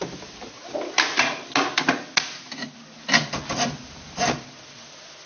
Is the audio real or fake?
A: real